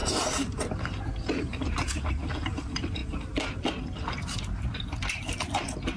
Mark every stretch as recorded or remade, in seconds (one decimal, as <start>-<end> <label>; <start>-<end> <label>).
0.0-2.1 remade; 2.1-6.0 recorded